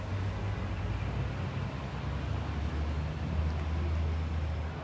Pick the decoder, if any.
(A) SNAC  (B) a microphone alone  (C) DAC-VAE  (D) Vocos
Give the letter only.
B